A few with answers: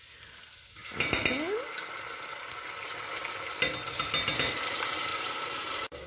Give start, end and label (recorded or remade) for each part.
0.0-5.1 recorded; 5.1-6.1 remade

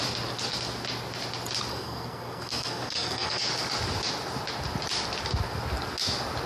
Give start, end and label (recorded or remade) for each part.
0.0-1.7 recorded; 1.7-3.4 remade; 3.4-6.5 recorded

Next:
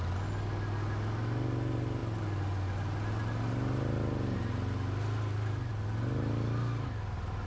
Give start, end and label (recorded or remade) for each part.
0.0-7.5 recorded